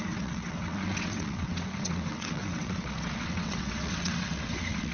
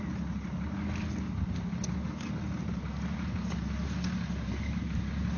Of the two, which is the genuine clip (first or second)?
second